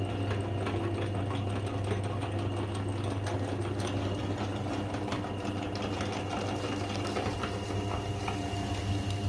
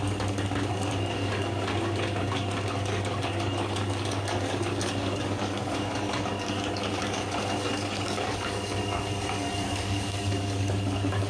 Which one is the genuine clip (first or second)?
first